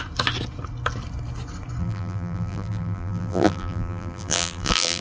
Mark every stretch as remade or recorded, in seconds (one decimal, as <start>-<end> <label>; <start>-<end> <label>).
0.0-1.8 recorded; 1.8-5.0 remade